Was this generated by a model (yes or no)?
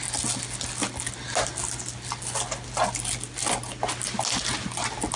no